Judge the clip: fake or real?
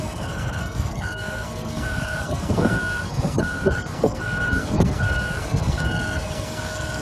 fake